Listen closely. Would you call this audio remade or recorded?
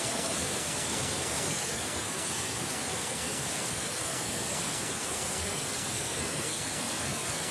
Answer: remade